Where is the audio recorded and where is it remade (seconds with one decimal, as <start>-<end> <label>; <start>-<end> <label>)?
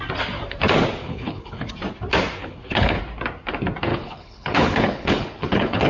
0.0-1.0 recorded; 1.0-1.7 remade; 1.7-2.4 recorded; 2.4-3.0 remade; 3.0-3.9 recorded; 3.9-5.9 remade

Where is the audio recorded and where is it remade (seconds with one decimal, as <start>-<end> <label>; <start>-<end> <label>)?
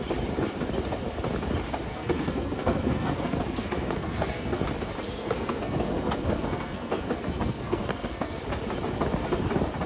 0.0-1.9 recorded; 1.9-4.6 remade; 4.6-5.0 recorded; 5.0-8.4 remade; 8.4-9.9 recorded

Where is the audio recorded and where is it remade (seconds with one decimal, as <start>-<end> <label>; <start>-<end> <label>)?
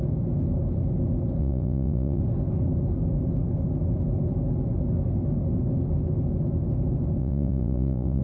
0.0-1.4 recorded; 1.4-2.2 remade; 2.2-7.2 recorded; 7.2-8.2 remade